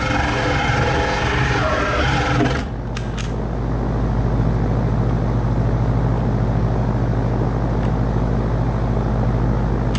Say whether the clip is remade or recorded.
recorded